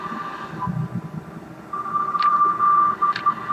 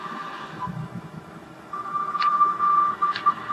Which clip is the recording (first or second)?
first